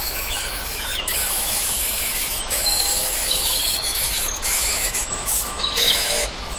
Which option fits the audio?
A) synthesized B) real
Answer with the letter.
A